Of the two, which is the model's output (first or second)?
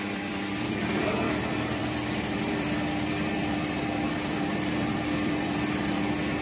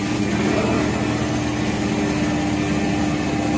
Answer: first